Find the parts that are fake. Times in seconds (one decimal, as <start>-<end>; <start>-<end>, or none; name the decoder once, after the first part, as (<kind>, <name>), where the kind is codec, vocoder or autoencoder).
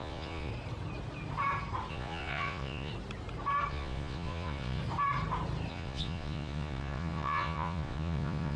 0.0-0.5 (vocoder, Vocos); 1.9-2.9; 3.7-4.8; 5.7-8.6